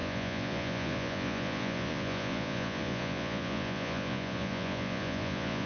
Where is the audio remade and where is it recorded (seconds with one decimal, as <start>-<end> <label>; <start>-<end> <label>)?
0.0-5.7 remade